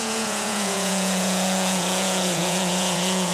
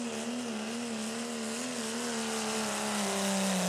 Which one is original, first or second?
second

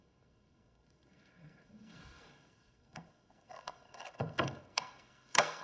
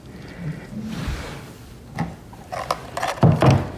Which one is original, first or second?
second